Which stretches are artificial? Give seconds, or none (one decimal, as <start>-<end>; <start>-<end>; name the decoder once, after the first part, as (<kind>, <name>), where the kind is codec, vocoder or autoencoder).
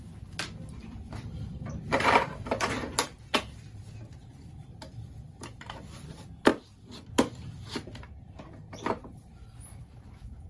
0.0-10.5 (vocoder, BigVGAN v2)